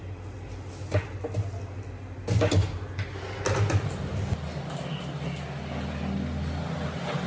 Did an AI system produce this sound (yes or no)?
no